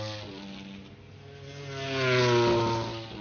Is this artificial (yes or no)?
no